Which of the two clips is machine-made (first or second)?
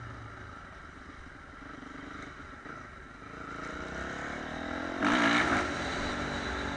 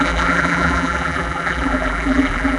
second